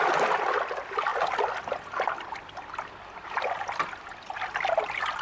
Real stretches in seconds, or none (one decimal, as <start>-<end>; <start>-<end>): 0.0-5.2